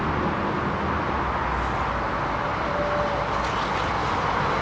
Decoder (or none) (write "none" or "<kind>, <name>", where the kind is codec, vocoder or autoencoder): none